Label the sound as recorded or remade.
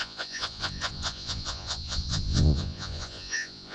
remade